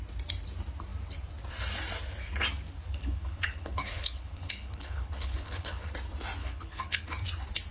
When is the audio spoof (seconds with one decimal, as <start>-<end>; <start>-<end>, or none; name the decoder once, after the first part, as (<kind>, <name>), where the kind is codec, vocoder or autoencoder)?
3.0-5.9 (codec, HILCodec); 6.4-7.0